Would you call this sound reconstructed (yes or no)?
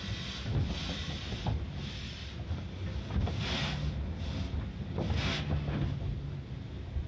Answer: no